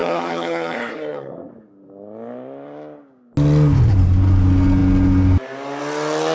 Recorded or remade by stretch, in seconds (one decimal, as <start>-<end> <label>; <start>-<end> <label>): 0.0-1.5 remade; 1.5-6.3 recorded